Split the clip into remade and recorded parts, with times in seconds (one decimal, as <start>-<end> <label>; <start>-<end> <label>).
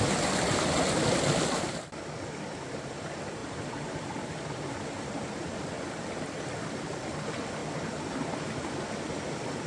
0.0-9.7 recorded